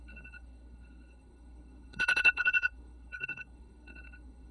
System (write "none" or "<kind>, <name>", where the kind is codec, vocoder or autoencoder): codec, SNAC